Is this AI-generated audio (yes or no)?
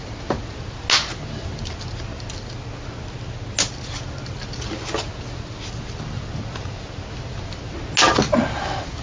no